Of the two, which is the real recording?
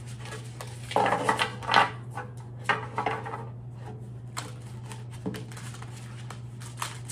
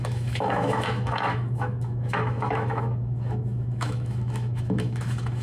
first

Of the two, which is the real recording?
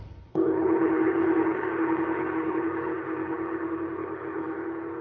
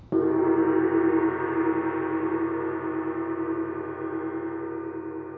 second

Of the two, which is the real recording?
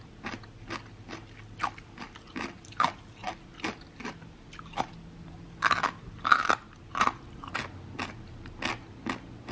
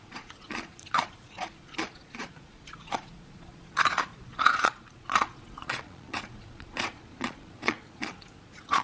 first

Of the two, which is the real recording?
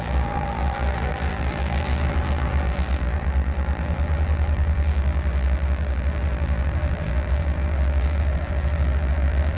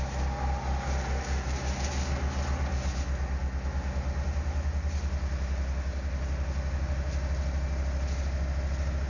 second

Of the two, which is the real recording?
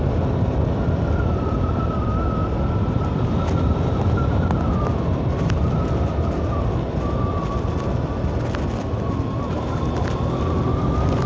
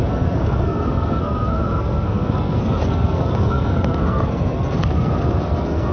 first